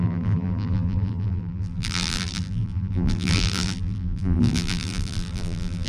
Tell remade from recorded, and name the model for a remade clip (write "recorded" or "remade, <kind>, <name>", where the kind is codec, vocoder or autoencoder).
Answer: remade, vocoder, BigVGAN v2